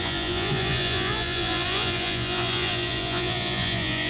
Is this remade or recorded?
remade